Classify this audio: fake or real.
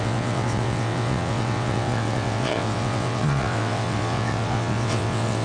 fake